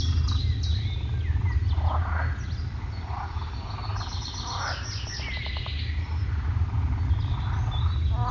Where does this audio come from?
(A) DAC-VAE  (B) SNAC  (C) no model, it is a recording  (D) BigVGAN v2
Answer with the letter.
C